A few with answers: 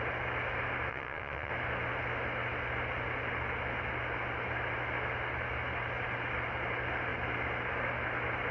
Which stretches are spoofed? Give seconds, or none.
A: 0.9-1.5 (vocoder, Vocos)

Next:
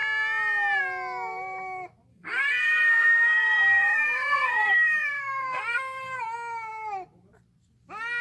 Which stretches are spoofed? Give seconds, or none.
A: 2.1-6.2 (codec, SNAC)

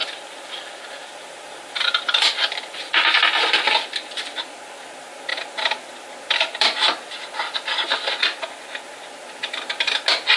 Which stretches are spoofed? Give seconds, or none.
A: 0.0-2.9 (vocoder, BigVGAN v2)

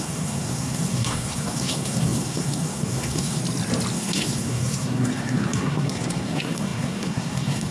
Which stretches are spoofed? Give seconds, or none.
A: 0.0-3.4 (codec, SNAC); 3.9-7.7

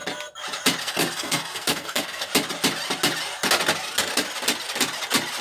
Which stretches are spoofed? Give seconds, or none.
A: 0.8-2.3 (codec, SNAC)

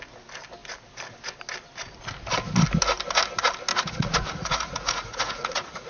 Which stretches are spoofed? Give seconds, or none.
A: 3.7-5.9 (vocoder, Vocos)